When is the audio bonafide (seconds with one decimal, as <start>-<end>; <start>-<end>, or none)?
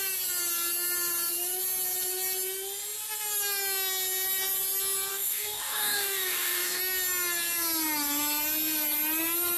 0.0-5.1; 6.8-9.6